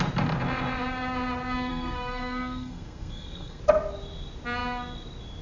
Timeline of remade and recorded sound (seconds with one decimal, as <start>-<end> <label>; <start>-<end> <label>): 0.0-1.7 recorded; 1.7-3.6 remade; 3.6-5.4 recorded